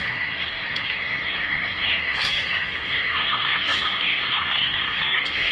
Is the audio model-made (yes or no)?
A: yes